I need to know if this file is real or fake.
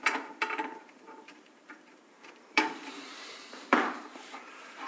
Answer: fake